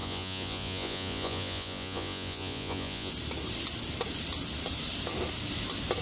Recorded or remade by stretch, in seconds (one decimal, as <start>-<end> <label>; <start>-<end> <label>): 0.0-3.1 remade; 3.1-6.0 recorded